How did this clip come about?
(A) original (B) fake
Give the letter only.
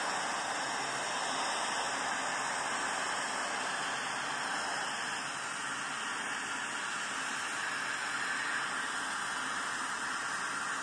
A